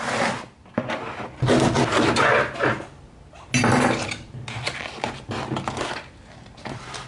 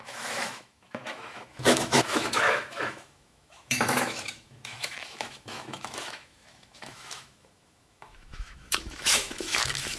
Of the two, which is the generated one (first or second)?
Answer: second